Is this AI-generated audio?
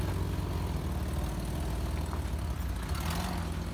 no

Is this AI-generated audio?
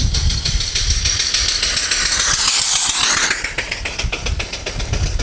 no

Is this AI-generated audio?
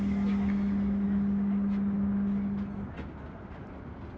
no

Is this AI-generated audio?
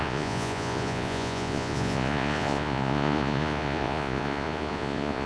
yes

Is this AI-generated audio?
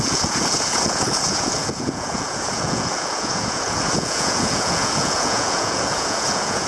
yes